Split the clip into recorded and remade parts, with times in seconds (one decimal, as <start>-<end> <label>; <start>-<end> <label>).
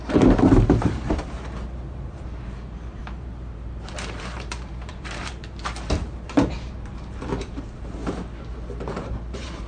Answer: 0.0-8.0 remade; 8.0-9.0 recorded; 9.0-9.7 remade